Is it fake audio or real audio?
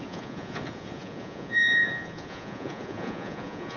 fake